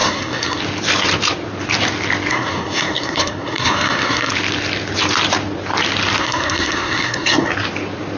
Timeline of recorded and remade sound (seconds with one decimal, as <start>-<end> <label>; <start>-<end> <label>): 0.0-0.6 remade; 0.6-2.3 recorded; 2.3-4.3 remade; 4.3-6.2 recorded; 6.2-7.5 remade; 7.5-8.2 recorded